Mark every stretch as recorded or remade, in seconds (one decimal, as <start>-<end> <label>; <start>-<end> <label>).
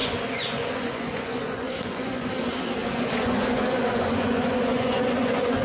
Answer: 0.0-2.3 remade; 2.3-2.8 recorded; 2.8-5.6 remade